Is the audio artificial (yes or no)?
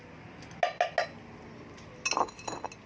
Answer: no